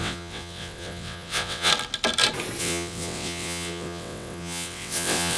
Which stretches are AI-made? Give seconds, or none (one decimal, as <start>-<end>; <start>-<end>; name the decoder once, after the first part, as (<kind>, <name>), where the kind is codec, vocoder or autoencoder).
0.0-1.7 (vocoder, WaveNeXt); 2.6-5.4